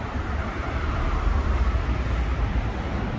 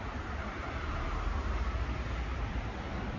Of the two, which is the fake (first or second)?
first